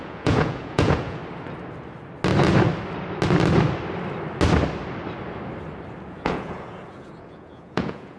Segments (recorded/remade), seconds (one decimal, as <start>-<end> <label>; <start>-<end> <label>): 0.0-1.2 remade; 1.2-6.1 recorded; 6.1-8.2 remade